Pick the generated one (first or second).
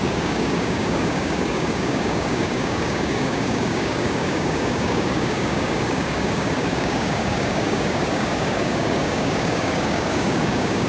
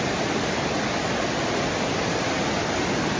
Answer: first